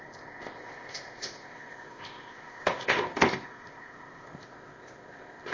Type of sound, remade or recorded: remade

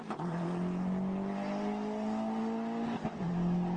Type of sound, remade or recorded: recorded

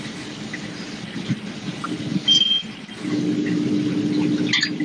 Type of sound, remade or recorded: recorded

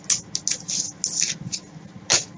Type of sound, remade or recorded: recorded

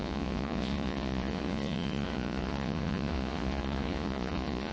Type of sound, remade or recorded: remade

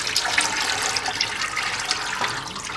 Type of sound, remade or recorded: recorded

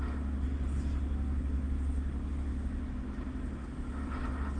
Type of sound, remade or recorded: recorded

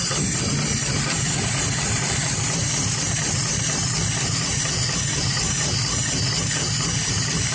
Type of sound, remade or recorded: recorded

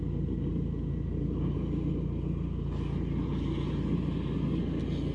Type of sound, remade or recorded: recorded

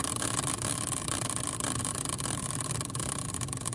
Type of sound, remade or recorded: recorded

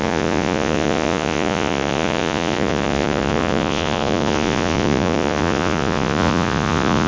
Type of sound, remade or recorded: remade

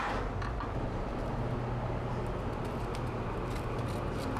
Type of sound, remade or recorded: recorded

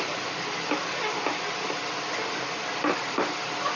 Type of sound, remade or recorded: recorded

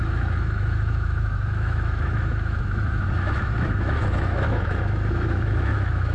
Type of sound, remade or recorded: remade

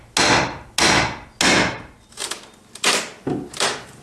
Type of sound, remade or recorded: recorded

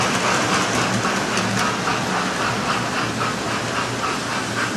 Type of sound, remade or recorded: recorded